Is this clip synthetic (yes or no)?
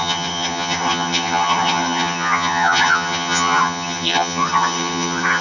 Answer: yes